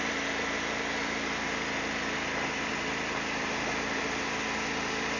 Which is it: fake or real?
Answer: real